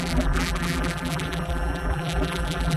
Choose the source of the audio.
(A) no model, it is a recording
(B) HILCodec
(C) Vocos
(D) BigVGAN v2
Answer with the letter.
D